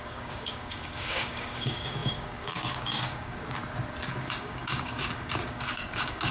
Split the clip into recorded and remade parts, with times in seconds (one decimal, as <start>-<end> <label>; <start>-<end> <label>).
0.0-3.6 remade; 3.6-4.1 recorded; 4.1-6.3 remade